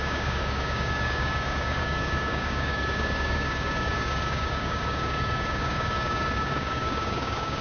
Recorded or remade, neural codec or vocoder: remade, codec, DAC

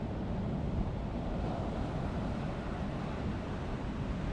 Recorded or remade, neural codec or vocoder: recorded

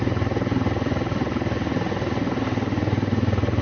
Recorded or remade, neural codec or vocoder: recorded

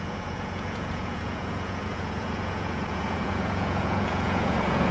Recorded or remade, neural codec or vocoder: remade, vocoder, Vocos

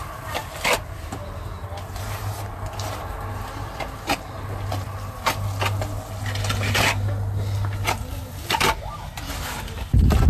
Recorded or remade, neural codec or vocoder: recorded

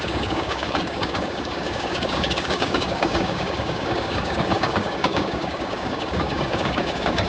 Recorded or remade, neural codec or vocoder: remade, codec, DAC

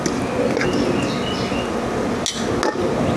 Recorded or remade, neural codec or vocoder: recorded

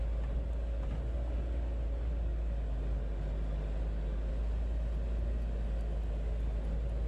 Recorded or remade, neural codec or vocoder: recorded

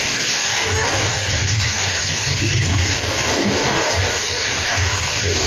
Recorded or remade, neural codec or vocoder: remade, codec, DAC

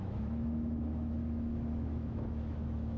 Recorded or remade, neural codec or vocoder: remade, autoencoder, DAC-VAE